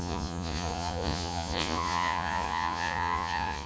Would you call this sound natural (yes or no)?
no